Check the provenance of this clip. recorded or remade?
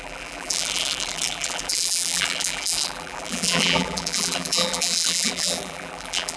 remade